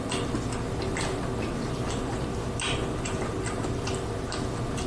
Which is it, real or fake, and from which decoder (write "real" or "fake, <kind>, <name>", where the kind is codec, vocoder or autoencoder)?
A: real